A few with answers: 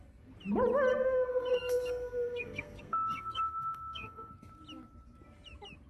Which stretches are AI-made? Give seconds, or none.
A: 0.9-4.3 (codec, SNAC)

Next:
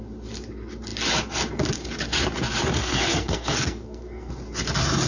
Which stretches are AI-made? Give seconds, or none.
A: 2.8-4.3 (codec, SNAC)